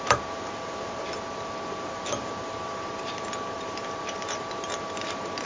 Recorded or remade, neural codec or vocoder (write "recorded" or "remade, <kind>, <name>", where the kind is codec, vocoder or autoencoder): remade, vocoder, BigVGAN v2